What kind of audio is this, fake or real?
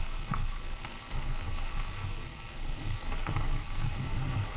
fake